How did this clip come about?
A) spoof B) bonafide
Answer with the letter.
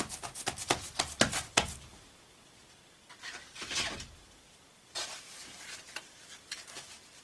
A